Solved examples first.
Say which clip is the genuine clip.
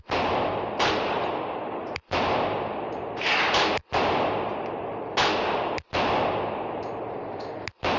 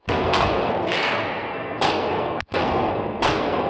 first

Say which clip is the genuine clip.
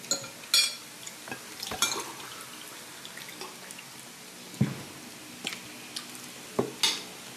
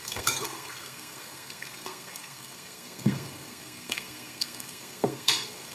first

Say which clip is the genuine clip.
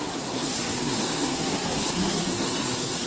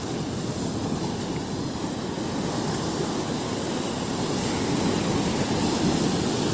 second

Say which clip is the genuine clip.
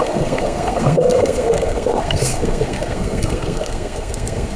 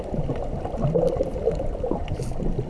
second